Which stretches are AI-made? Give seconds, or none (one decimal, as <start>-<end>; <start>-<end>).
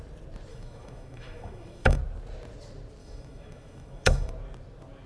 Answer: 0.5-2.0; 3.0-4.3